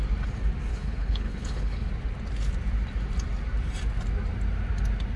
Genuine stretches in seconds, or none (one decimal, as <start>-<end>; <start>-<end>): 0.0-0.7; 1.9-5.2